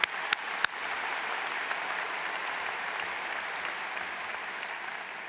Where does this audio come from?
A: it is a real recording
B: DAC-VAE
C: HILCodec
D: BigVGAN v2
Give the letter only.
A